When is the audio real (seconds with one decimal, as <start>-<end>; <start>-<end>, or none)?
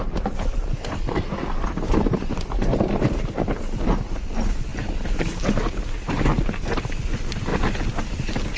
0.0-8.6